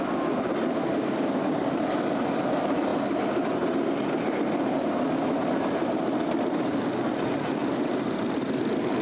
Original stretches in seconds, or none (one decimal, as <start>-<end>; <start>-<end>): 0.0-0.9; 1.6-9.0